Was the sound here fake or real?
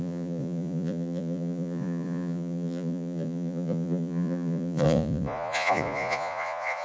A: fake